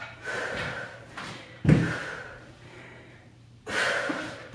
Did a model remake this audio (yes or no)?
yes